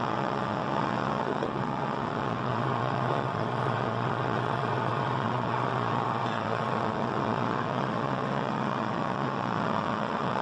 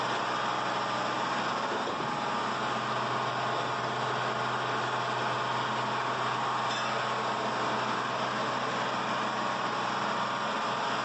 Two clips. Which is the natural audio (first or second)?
second